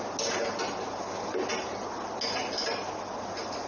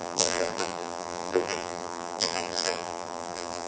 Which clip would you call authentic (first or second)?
first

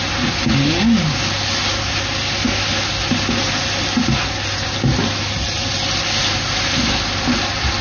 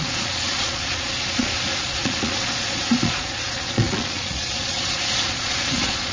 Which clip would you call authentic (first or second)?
first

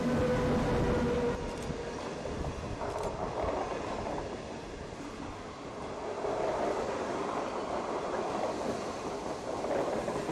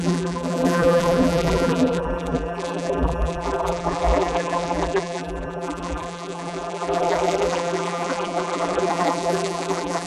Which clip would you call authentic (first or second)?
first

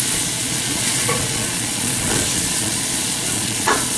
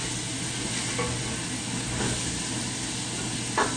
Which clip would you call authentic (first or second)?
second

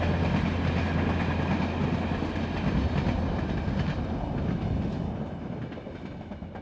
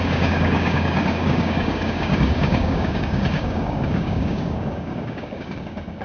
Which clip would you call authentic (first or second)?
first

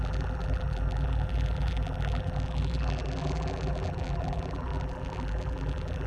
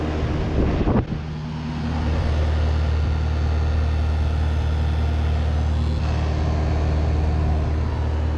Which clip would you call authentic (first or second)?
second